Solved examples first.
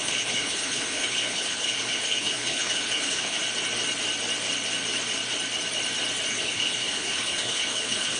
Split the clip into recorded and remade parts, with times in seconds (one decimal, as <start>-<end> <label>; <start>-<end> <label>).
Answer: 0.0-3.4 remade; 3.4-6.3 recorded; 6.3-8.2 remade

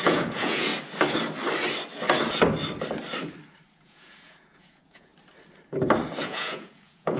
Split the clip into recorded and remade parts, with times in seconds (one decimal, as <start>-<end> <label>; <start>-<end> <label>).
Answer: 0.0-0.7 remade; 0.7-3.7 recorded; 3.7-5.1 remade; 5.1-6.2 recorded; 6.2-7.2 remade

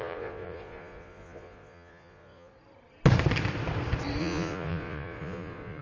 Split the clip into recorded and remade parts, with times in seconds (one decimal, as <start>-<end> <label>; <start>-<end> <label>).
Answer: 0.0-2.5 remade; 2.5-4.2 recorded; 4.2-5.8 remade

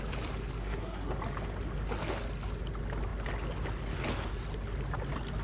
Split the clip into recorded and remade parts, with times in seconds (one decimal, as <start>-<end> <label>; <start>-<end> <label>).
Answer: 0.0-0.6 recorded; 0.6-1.1 remade; 1.1-5.4 recorded

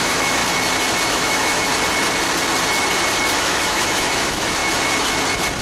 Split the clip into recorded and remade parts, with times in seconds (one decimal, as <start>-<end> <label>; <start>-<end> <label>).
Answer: 0.0-0.4 remade; 0.4-1.1 recorded; 1.1-1.7 remade; 1.7-3.3 recorded; 3.3-4.6 remade; 4.6-5.6 recorded

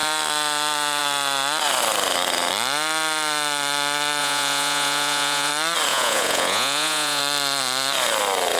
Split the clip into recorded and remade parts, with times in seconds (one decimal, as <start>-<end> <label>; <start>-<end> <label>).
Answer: 0.0-4.2 recorded; 4.2-5.5 remade; 5.5-5.9 recorded; 5.9-7.2 remade; 7.2-8.6 recorded

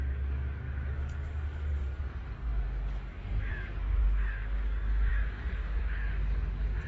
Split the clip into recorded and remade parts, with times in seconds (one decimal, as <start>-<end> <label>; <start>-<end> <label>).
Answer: 0.0-6.9 remade

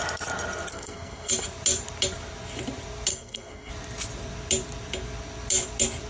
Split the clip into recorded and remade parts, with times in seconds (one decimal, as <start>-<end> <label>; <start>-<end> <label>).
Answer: 0.0-0.7 recorded; 0.7-1.3 remade; 1.3-3.1 recorded; 3.1-3.7 remade; 3.7-6.1 recorded